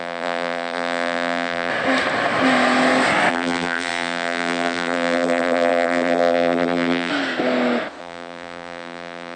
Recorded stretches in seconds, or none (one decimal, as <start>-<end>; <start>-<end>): 1.7-3.3; 7.1-8.0